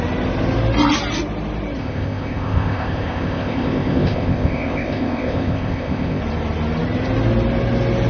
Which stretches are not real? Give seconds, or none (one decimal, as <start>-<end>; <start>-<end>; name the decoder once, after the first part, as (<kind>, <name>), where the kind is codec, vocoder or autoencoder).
1.8-6.2 (codec, ZipCodec)